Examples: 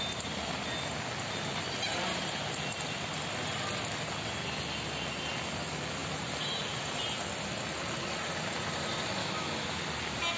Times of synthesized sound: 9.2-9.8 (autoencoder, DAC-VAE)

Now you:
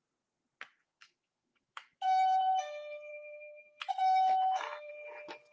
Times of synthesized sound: 0.8-2.4 (autoencoder, DAC-VAE); 3.1-4.9

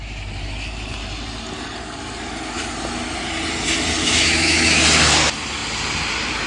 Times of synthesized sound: 4.0-4.8 (autoencoder, DAC-VAE)

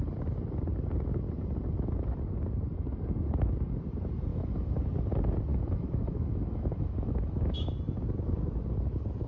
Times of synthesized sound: 4.3-4.8 (autoencoder, DAC-VAE); 5.5-7.7

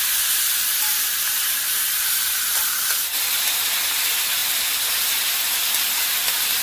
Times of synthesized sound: none

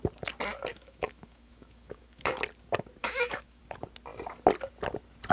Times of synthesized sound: 0.7-2.3 (autoencoder, DAC-VAE); 3.0-3.6

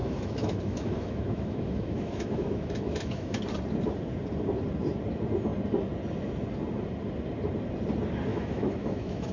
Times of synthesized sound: 0.0-3.4 (autoencoder, DAC-VAE); 8.3-9.3